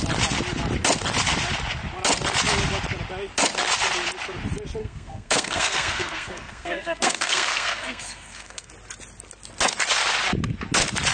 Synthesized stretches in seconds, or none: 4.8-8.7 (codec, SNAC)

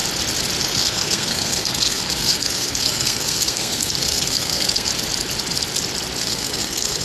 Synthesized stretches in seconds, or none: 0.6-4.9 (codec, SNAC); 6.2-7.0

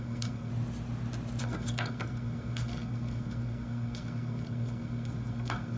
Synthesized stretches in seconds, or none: 0.0-0.5 (codec, SNAC); 1.4-5.8

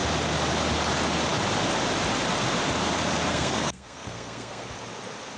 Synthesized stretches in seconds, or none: 3.3-4.7 (codec, SNAC)

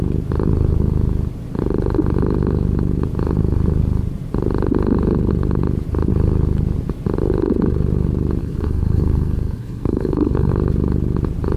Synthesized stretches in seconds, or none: 8.4-10.5 (codec, SNAC)

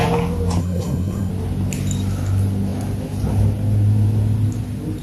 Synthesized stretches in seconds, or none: 0.6-1.3 (codec, SNAC)

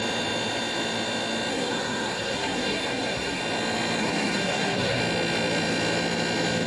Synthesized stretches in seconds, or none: 1.5-3.4 (codec, SNAC); 4.0-5.0